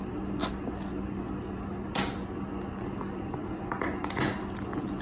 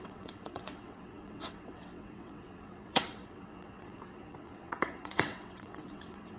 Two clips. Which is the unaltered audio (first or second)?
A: first